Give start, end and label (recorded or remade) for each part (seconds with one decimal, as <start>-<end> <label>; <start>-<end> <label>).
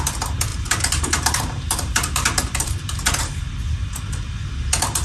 0.0-0.5 recorded; 0.5-3.2 remade; 3.2-5.0 recorded